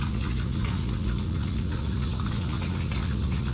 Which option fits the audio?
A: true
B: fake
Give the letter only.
B